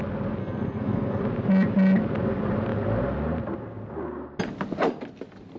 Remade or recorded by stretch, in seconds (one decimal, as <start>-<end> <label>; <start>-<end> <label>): 0.0-0.4 recorded; 0.4-1.2 remade; 1.2-5.6 recorded